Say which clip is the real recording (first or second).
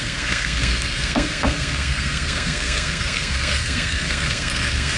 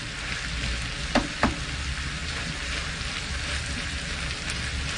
second